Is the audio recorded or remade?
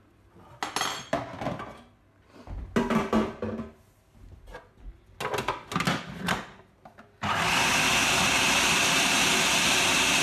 recorded